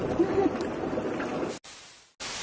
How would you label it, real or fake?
real